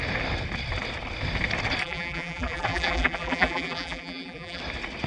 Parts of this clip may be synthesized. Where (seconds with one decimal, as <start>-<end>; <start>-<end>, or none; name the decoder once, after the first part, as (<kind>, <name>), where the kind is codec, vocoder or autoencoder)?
1.8-4.6 (vocoder, BigVGAN v2)